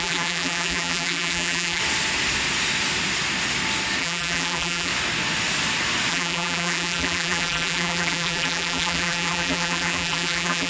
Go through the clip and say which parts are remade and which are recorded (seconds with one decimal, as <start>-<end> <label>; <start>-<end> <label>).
0.0-1.8 remade; 1.8-4.0 recorded; 4.0-4.9 remade; 4.9-6.1 recorded; 6.1-10.7 remade